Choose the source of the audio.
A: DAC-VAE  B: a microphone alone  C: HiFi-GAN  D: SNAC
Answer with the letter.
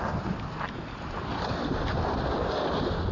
B